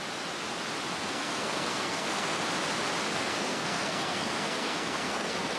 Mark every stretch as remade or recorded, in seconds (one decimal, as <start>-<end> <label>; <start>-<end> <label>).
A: 0.0-1.0 recorded; 1.0-2.4 remade; 2.4-3.1 recorded; 3.1-5.6 remade